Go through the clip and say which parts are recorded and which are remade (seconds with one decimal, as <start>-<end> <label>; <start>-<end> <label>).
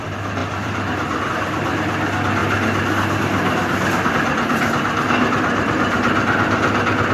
0.0-2.4 remade; 2.4-4.1 recorded; 4.1-7.1 remade